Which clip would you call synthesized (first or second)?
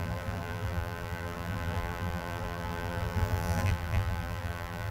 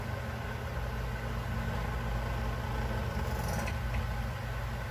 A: first